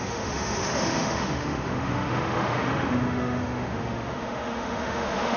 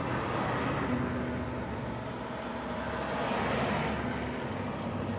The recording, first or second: second